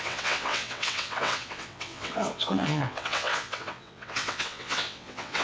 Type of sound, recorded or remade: remade